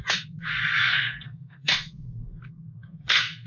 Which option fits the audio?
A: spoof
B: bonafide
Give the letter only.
A